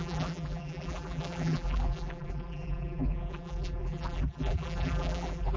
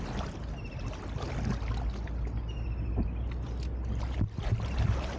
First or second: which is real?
second